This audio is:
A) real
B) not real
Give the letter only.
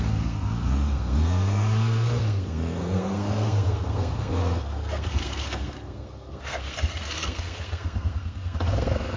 B